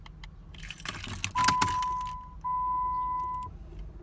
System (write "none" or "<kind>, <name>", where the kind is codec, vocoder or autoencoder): none